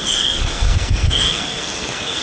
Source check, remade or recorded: remade